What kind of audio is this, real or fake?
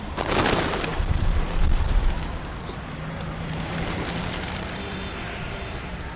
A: fake